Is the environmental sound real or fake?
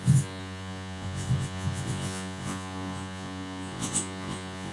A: fake